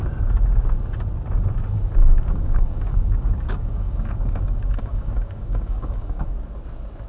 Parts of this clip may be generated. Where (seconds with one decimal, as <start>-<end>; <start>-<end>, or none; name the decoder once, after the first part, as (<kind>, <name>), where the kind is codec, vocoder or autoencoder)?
2.0-6.3 (codec, DAC)